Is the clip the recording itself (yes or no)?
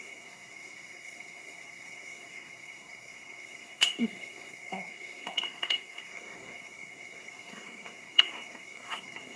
no